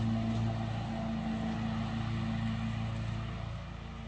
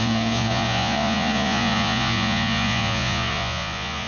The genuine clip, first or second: first